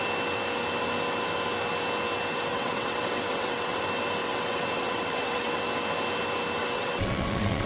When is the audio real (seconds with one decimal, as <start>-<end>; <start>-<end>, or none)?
0.0-2.5; 3.8-4.2; 5.5-6.6